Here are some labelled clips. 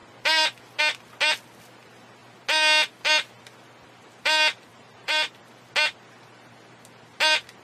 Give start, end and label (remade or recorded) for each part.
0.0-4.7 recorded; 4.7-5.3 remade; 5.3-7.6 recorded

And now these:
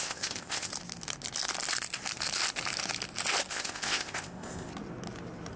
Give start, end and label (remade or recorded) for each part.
0.0-0.7 remade; 0.7-3.5 recorded; 3.5-4.7 remade; 4.7-5.6 recorded

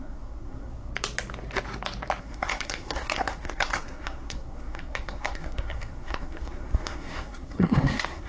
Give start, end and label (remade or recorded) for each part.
0.0-0.9 remade; 0.9-2.2 recorded; 2.2-8.3 remade

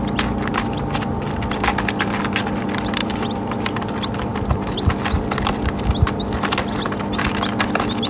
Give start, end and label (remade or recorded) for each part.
0.0-3.0 recorded; 3.0-3.5 remade; 3.5-4.3 recorded; 4.3-4.9 remade; 4.9-8.1 recorded